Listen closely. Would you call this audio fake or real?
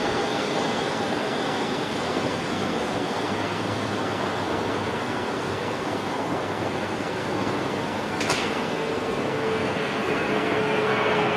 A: fake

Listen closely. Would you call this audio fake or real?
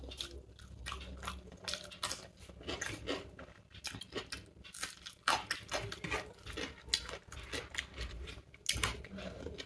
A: real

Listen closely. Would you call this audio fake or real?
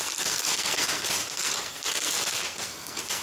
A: fake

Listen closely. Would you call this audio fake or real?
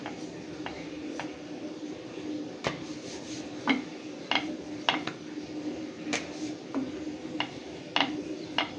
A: real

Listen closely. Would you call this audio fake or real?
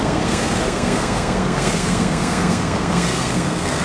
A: fake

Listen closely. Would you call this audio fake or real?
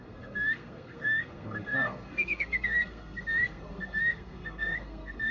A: fake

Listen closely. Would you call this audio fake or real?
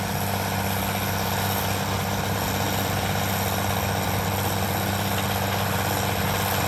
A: real